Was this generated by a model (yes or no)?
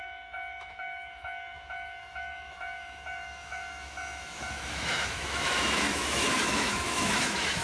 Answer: yes